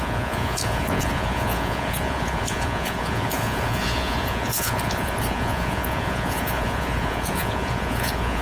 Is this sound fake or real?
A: fake